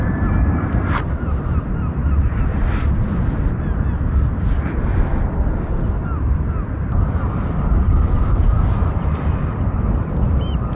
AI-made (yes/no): no